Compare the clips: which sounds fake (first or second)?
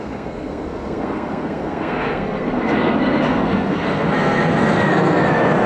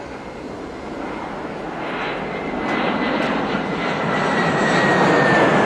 first